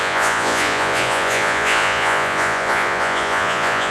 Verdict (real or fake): fake